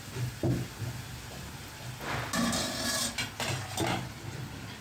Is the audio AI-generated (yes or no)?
no